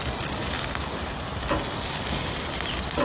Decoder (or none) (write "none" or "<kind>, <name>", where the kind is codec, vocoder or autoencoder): none